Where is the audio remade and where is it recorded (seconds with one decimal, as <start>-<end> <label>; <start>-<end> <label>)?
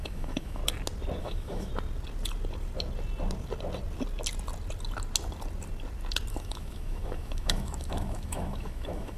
0.0-0.6 remade; 0.6-1.2 recorded; 1.2-1.7 remade; 1.7-6.3 recorded; 6.3-9.2 remade